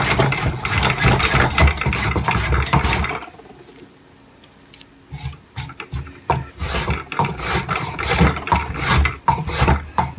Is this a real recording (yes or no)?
yes